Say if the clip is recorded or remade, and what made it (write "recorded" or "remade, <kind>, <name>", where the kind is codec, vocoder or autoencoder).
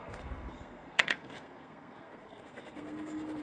remade, codec, SNAC